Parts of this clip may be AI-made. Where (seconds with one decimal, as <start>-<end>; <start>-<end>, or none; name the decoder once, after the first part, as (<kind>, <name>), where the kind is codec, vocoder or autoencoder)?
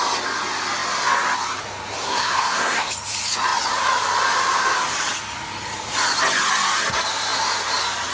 2.0-2.9 (codec, SNAC)